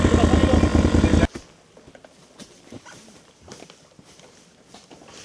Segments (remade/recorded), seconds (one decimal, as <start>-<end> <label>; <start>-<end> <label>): 0.0-5.2 recorded